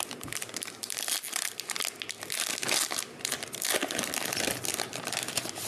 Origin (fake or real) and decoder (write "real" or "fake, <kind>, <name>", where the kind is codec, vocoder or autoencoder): real